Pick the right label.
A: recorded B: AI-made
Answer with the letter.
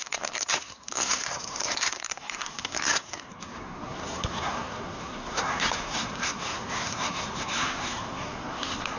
B